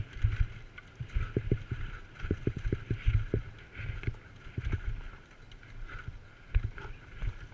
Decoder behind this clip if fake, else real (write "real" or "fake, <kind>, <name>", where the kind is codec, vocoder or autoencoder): real